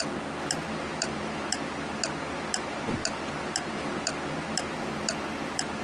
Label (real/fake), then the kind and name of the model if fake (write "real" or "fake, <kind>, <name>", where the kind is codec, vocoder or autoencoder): real